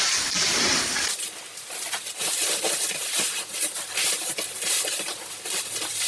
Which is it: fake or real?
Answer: real